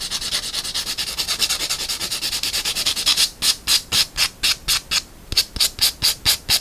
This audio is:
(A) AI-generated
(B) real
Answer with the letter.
B